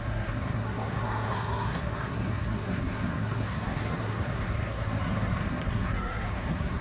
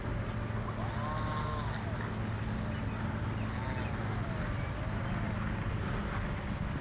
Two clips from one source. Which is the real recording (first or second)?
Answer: second